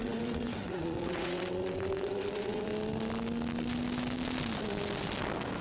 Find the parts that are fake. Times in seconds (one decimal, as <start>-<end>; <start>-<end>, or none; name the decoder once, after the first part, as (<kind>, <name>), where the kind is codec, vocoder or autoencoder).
0.0-2.7 (vocoder, WaveNeXt)

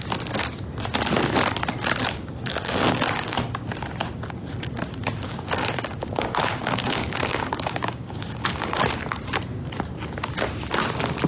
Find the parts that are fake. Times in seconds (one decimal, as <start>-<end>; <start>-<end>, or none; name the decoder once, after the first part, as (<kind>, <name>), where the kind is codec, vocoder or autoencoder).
2.5-3.4 (codec, DAC); 5.3-8.8

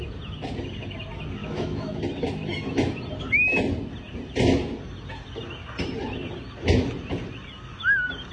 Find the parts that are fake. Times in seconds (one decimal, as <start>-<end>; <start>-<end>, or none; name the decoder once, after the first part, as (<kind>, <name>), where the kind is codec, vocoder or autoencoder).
1.4-2.0 (autoencoder, DAC-VAE)

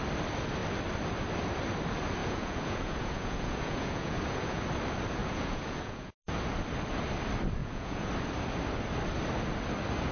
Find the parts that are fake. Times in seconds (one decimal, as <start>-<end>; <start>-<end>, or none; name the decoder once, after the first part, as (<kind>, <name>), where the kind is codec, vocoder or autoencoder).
2.2-4.6 (vocoder, Vocos); 5.2-6.1; 7.6-8.1

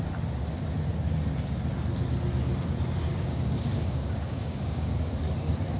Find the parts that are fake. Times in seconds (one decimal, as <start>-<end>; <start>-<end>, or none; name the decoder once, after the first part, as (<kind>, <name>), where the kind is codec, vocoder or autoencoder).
3.1-5.2 (codec, DAC)

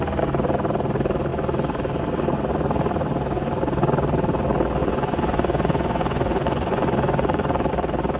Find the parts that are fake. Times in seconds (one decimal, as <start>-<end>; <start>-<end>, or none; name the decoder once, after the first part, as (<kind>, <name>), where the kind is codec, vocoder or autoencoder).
4.8-7.7 (vocoder, Vocos)

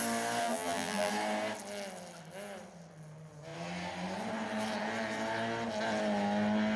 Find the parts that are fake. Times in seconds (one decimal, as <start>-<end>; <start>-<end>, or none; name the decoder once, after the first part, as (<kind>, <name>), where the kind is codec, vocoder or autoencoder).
0.4-1.1 (vocoder, BigVGAN v2)

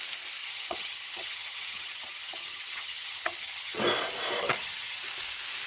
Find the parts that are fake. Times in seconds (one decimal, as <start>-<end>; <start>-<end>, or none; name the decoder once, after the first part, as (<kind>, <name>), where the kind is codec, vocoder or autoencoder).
0.4-3.8 (vocoder, HiFi-GAN); 4.4-5.0